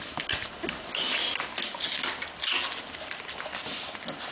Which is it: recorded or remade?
recorded